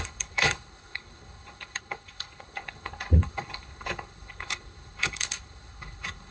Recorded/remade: remade